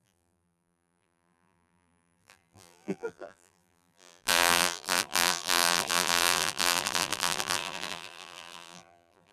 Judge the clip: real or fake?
fake